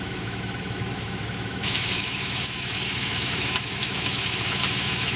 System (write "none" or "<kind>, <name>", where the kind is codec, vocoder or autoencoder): autoencoder, DAC-VAE